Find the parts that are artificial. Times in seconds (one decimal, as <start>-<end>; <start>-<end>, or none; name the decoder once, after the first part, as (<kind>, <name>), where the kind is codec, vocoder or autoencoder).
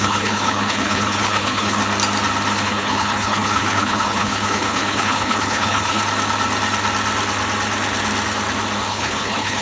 0.0-1.8 (codec, HILCodec); 2.6-6.0; 8.9-9.6